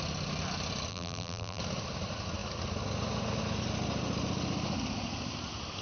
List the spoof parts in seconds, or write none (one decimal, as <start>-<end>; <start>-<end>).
0.9-1.6